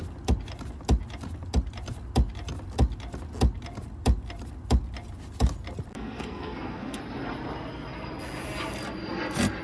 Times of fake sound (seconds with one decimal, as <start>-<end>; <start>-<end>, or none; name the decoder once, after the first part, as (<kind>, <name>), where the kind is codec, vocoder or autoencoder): 5.9-7.0 (codec, SNAC)